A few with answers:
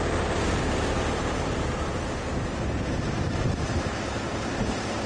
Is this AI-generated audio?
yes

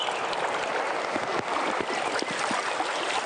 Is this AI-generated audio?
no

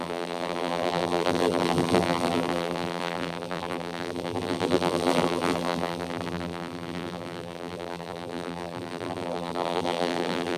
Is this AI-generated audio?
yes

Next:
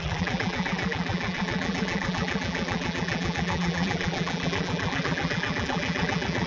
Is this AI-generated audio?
yes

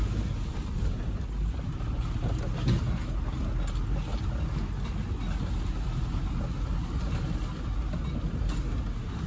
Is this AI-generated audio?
no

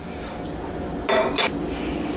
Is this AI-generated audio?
no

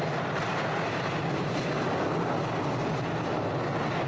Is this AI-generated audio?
no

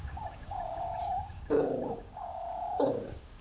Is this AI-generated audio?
yes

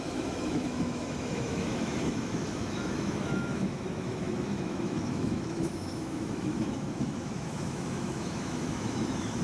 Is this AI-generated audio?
yes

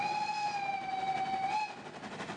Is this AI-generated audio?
no